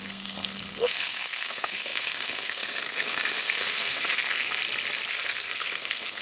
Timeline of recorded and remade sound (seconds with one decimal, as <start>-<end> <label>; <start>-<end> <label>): 0.0-4.6 remade; 4.6-5.1 recorded; 5.1-6.2 remade